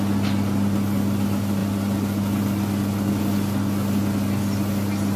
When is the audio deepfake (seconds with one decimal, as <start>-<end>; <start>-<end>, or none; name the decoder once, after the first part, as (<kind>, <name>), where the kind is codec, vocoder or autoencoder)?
none